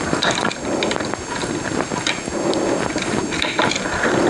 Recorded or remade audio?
recorded